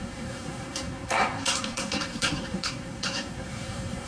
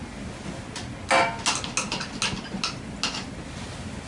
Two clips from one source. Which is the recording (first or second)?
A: second